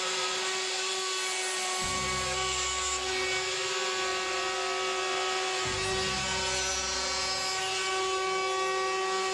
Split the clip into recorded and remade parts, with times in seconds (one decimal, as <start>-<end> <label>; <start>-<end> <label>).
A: 0.0-9.3 recorded